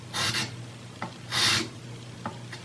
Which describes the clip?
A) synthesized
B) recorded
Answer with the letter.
B